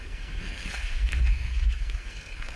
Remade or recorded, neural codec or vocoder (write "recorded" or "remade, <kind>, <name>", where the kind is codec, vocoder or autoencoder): remade, codec, SNAC